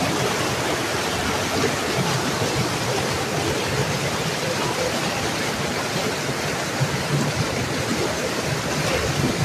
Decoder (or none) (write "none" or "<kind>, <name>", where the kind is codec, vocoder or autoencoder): none